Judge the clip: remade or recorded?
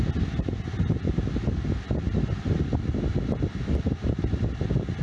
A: recorded